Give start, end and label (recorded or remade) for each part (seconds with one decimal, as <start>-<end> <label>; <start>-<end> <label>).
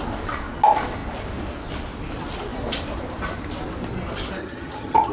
0.0-4.4 recorded; 4.4-5.1 remade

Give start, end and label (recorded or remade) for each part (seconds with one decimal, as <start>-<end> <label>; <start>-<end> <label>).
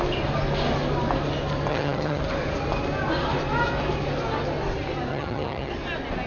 0.0-1.7 recorded; 1.7-2.2 remade; 2.2-5.1 recorded; 5.1-5.7 remade; 5.7-6.3 recorded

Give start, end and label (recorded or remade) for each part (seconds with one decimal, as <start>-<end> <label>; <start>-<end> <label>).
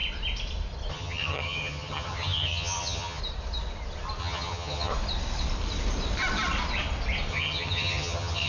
0.0-0.9 recorded; 0.9-3.2 remade; 3.2-4.2 recorded; 4.2-4.9 remade; 4.9-7.3 recorded; 7.3-8.5 remade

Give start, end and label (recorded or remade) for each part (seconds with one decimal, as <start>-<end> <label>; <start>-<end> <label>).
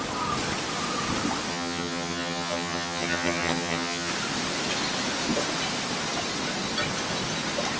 0.0-1.5 recorded; 1.5-4.1 remade; 4.1-7.8 recorded